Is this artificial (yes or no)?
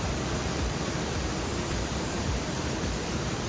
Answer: yes